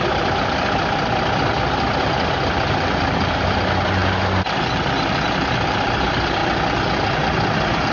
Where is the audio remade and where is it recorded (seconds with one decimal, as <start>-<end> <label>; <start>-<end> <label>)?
0.0-1.5 remade; 1.5-2.0 recorded; 2.0-6.4 remade; 6.4-7.0 recorded; 7.0-7.9 remade